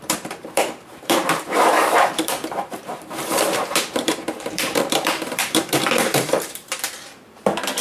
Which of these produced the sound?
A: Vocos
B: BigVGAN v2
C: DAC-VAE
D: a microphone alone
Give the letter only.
B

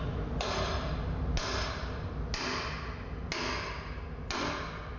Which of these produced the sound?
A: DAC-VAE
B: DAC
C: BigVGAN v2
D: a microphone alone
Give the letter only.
D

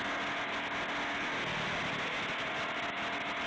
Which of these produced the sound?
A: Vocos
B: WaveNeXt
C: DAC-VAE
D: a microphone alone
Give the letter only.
D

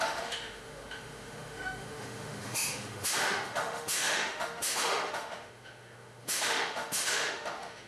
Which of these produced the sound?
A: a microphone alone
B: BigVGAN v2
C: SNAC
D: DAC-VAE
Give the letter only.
D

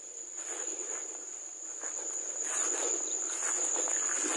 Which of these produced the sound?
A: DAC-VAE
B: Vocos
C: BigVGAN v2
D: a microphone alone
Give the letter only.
D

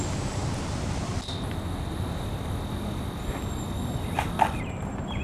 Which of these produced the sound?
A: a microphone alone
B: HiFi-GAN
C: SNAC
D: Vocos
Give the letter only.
A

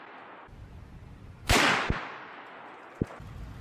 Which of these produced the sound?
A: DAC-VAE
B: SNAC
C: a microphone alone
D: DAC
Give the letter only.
C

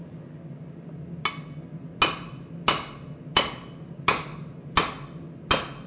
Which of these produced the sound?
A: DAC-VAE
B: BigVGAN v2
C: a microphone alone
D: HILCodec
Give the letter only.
C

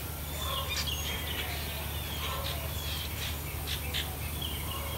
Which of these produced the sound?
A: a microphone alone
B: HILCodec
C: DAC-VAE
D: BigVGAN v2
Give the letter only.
A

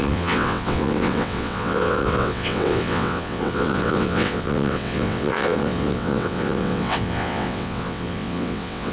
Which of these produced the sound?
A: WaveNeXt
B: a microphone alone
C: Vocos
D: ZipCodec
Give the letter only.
A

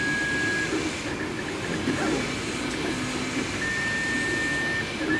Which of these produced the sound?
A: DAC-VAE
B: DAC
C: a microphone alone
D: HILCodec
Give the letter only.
C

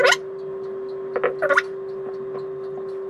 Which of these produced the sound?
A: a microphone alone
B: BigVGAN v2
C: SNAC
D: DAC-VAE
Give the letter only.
A